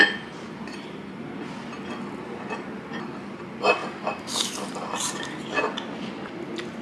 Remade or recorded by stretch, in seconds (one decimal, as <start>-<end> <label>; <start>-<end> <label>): 0.0-3.8 recorded; 3.8-5.1 remade; 5.1-6.8 recorded

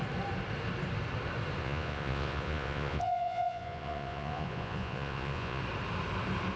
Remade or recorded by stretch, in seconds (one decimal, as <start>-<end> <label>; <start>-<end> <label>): 0.0-1.6 recorded; 1.6-5.6 remade; 5.6-6.6 recorded

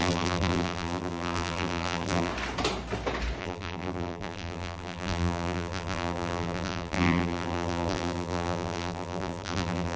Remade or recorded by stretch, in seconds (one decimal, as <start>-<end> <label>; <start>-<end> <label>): 0.0-2.3 remade; 2.3-3.4 recorded; 3.4-10.0 remade

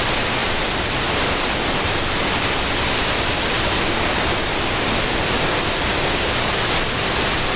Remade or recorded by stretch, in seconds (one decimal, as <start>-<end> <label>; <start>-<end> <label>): 0.0-0.4 recorded; 0.4-2.0 remade; 2.0-7.6 recorded

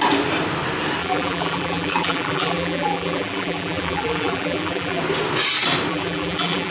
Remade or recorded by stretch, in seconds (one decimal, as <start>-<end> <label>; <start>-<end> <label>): 0.0-1.0 recorded; 1.0-5.0 remade; 5.0-5.9 recorded; 5.9-6.7 remade

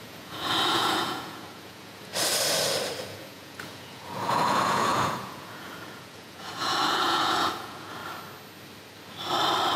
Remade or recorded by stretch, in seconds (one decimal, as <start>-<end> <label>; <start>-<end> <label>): 0.0-2.1 remade; 2.1-3.0 recorded; 3.0-8.0 remade; 8.0-9.8 recorded

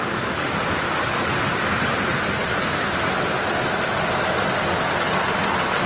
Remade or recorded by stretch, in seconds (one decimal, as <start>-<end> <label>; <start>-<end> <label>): 0.0-5.9 recorded

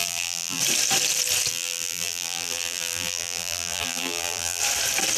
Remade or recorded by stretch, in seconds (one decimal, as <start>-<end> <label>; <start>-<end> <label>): 0.0-0.6 remade; 0.6-1.5 recorded; 1.5-4.6 remade; 4.6-5.2 recorded